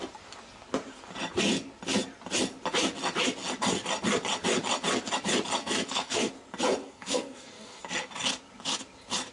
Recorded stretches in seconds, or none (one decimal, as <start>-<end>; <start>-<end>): 0.0-5.6; 6.3-6.8; 7.8-9.3